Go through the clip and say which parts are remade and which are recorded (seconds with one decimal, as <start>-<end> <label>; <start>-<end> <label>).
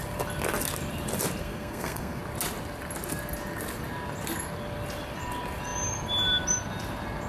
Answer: 0.0-1.4 recorded; 1.4-2.2 remade; 2.2-7.3 recorded